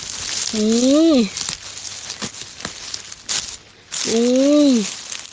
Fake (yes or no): no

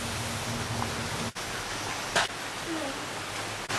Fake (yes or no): no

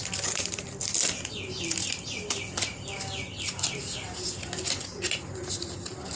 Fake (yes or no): no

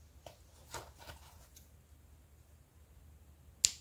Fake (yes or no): no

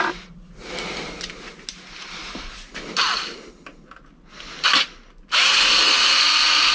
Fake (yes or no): no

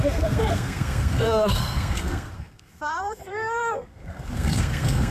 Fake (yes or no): yes